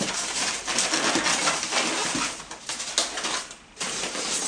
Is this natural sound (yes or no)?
yes